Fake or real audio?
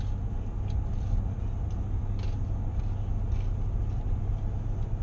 real